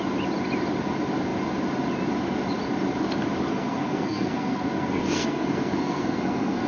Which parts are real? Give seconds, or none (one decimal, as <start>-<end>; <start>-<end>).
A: 0.0-3.5